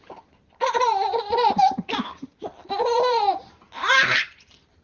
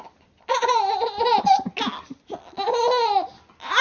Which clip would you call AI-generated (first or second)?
first